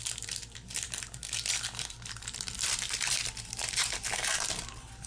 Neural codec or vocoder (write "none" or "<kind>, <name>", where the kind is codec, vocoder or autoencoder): vocoder, BigVGAN v2